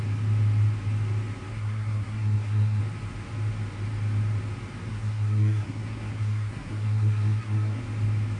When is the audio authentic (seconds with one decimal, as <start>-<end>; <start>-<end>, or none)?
0.0-1.5; 2.8-4.9; 7.8-8.4